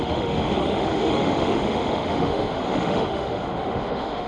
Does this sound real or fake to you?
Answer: fake